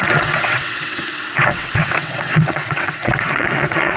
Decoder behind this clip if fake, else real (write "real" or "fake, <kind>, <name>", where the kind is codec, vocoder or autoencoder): fake, vocoder, WaveNeXt